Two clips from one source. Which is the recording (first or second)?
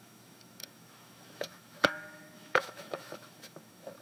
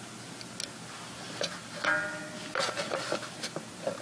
second